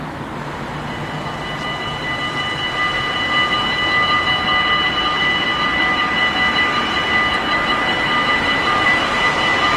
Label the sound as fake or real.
real